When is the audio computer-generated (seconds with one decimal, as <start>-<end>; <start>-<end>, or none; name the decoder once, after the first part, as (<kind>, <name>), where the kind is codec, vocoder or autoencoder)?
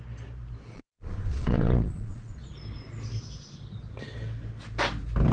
0.7-2.5 (vocoder, Vocos)